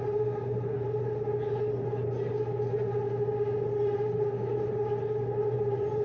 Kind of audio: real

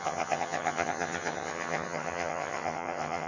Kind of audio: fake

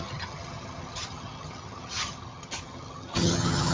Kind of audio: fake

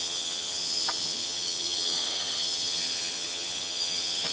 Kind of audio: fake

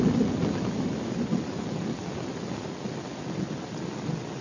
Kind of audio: real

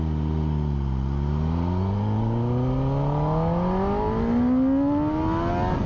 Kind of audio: real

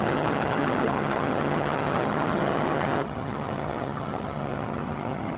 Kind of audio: fake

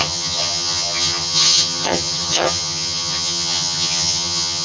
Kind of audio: fake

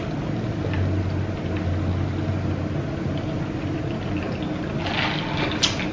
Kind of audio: real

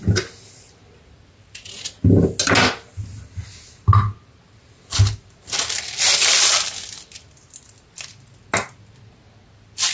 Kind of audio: real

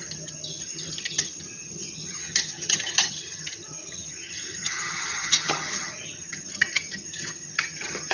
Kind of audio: fake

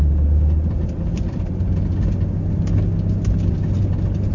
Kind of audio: real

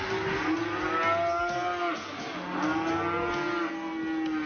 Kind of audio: real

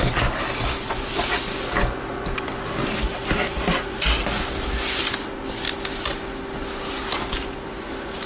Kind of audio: real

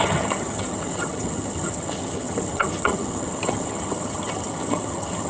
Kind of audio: fake